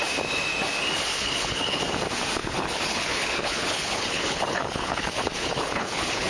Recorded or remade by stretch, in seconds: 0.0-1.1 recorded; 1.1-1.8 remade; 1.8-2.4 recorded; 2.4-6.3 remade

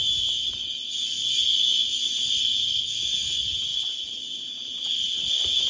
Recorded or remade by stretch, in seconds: 0.0-3.7 recorded; 3.7-5.2 remade; 5.2-5.7 recorded

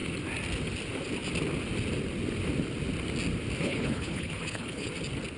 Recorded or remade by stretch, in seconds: 0.0-3.6 recorded; 3.6-4.9 remade; 4.9-5.4 recorded